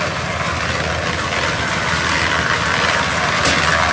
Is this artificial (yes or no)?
no